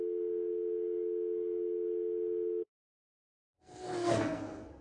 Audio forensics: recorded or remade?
remade